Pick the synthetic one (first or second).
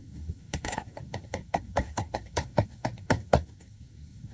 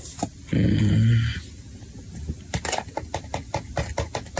first